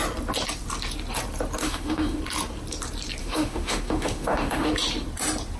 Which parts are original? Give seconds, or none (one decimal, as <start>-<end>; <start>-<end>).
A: 0.0-1.6; 2.2-3.2; 4.7-5.6